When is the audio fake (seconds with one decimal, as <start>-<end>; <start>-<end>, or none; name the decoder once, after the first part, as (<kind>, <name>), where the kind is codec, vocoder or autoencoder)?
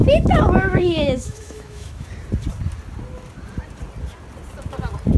0.0-2.1 (autoencoder, DAC-VAE)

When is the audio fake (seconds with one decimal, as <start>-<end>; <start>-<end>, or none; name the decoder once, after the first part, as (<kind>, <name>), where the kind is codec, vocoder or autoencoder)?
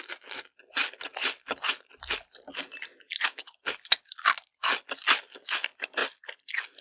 none